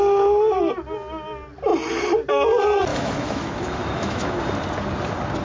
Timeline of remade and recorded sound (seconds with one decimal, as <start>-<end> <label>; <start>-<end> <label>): 0.0-2.9 recorded; 2.9-4.4 remade; 4.4-5.4 recorded